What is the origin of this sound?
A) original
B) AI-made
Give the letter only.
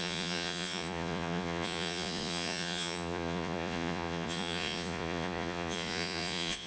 B